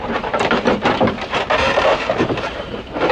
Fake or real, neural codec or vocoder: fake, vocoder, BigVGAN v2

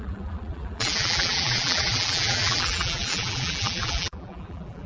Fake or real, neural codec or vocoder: fake, vocoder, BigVGAN v2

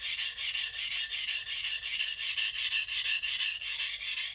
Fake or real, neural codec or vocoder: real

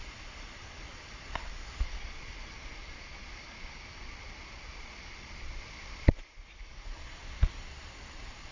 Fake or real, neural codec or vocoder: fake, vocoder, Vocos